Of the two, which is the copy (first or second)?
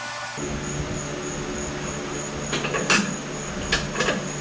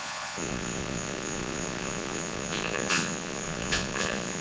second